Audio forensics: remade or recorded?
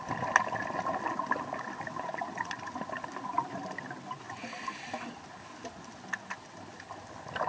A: recorded